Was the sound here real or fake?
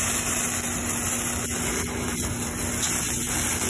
real